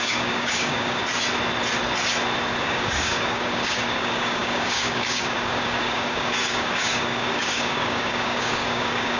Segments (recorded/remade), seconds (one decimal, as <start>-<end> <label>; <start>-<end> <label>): 0.0-1.0 remade; 1.0-2.6 recorded; 2.6-9.2 remade